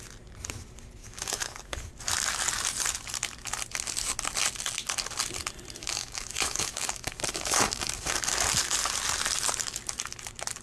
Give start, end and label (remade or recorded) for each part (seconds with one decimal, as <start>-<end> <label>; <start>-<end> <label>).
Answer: 0.0-1.0 recorded; 1.0-1.9 remade; 1.9-5.8 recorded; 5.8-8.3 remade; 8.3-10.6 recorded